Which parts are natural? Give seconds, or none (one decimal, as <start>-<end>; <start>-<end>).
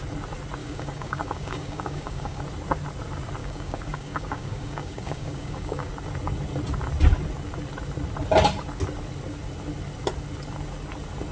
0.0-0.6; 2.4-3.4; 5.9-11.3